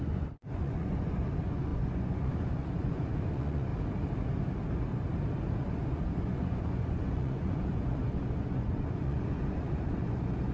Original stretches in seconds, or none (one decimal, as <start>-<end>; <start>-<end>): 3.7-5.6